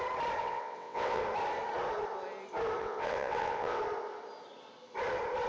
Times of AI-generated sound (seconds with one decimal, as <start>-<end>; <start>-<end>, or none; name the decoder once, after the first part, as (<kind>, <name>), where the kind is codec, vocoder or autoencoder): 0.4-1.2 (vocoder, WaveNeXt); 2.8-3.8